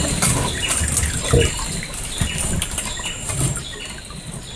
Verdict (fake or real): real